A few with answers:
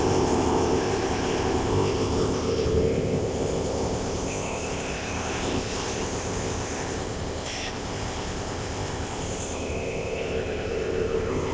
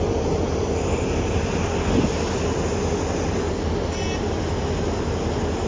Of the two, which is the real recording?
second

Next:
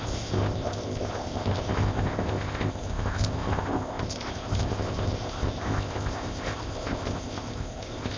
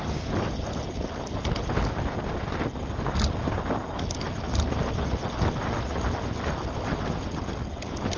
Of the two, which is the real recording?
second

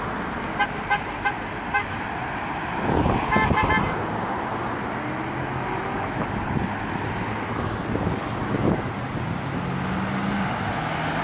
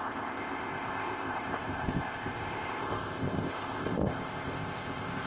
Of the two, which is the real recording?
first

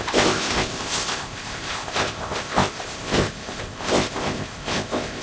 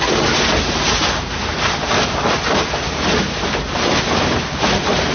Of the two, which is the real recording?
second